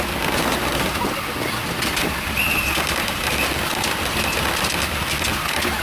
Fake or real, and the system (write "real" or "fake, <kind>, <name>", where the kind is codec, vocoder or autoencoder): fake, vocoder, BigVGAN v2